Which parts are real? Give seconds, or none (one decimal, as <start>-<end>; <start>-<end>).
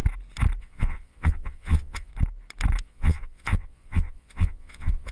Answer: 0.0-0.6; 2.1-2.8